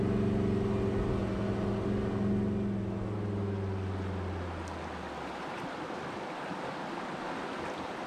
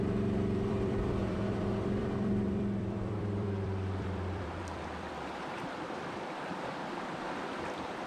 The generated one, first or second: second